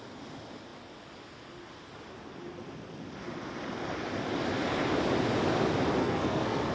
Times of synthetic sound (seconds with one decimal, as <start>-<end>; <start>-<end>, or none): 6.0-6.7